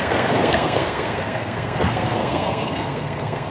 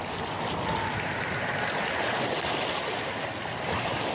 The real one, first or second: second